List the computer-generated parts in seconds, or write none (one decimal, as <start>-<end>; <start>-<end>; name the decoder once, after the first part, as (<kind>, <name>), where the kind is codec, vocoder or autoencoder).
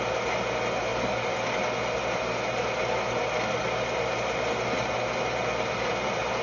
none